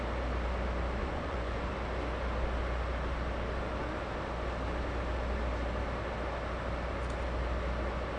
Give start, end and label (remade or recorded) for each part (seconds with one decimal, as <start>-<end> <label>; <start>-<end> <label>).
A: 0.0-1.0 recorded; 1.0-1.7 remade; 1.7-8.2 recorded